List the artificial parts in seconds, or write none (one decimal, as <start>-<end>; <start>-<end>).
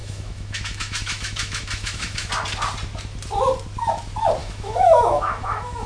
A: 0.0-2.3; 4.4-5.9